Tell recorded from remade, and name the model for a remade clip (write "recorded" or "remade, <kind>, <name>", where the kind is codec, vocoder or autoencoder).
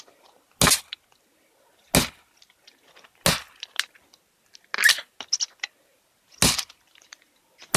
recorded